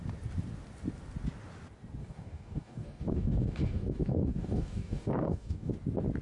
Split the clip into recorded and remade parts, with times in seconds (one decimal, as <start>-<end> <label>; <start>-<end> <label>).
0.0-2.0 recorded; 2.0-5.7 remade; 5.7-6.2 recorded